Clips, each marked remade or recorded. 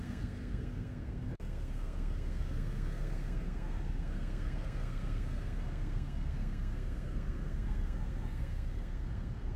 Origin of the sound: remade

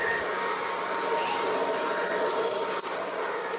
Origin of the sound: recorded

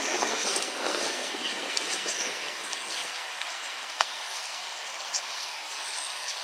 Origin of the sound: remade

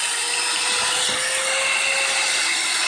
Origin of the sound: recorded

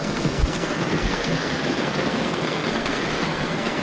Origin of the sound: remade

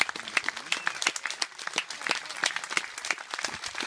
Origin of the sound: recorded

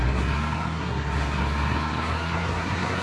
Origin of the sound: remade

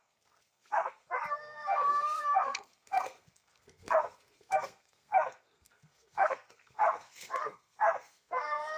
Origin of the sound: remade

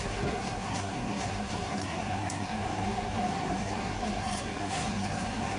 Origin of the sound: remade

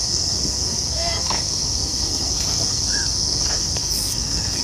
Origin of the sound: remade